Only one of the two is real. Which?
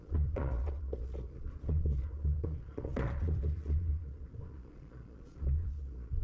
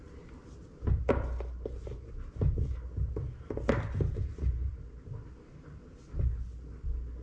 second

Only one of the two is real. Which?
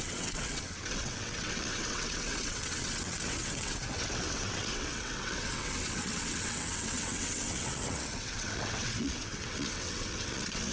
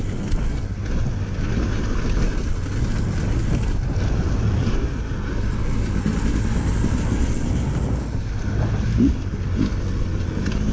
second